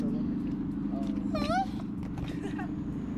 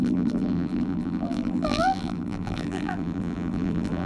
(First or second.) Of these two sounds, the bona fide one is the first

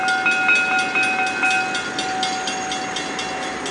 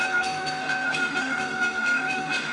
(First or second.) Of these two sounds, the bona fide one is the first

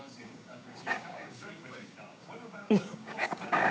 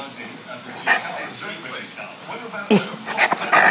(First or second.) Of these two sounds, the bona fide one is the second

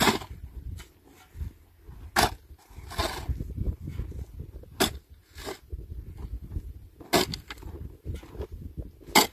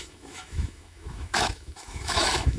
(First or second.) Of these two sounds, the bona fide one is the first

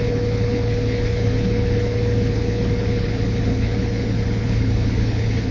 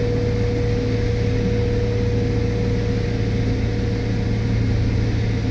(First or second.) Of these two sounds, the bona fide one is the second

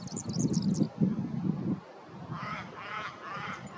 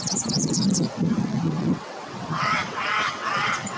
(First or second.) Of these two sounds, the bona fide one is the first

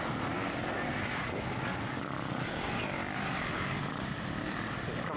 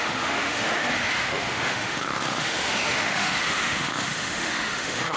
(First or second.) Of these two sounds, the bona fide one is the first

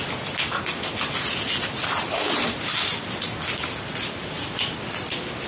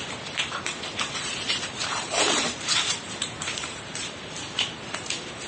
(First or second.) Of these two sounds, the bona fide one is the first